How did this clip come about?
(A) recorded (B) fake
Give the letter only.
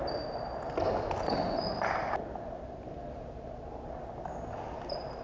A